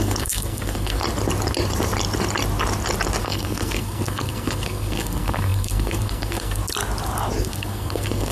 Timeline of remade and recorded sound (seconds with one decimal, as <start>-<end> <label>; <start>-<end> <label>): 0.0-1.0 remade; 1.0-3.2 recorded; 3.2-6.6 remade; 6.6-7.4 recorded; 7.4-8.3 remade